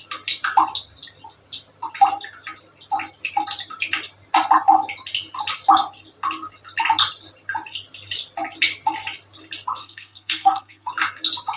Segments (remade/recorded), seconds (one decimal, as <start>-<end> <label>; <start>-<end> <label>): 0.0-9.8 recorded; 9.8-10.9 remade; 10.9-11.6 recorded